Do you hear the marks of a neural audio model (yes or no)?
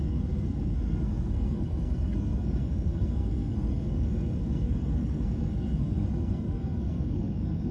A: yes